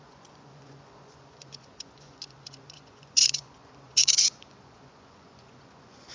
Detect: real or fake fake